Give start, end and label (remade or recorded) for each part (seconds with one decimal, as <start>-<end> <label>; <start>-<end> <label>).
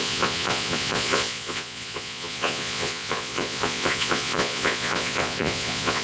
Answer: 0.0-6.0 remade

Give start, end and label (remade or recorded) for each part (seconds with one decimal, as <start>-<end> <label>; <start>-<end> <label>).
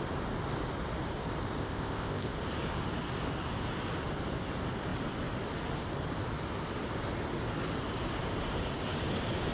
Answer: 0.0-1.6 recorded; 1.6-2.3 remade; 2.3-9.5 recorded